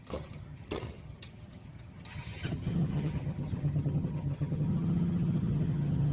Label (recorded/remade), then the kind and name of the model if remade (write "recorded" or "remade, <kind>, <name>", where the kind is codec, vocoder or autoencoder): remade, vocoder, HiFi-GAN